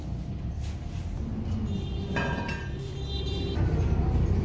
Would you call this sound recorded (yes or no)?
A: yes